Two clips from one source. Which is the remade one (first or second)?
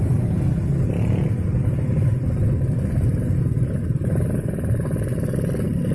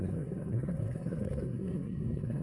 second